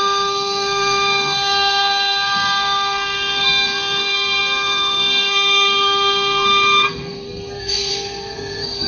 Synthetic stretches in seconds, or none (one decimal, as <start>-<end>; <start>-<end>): 0.0-8.9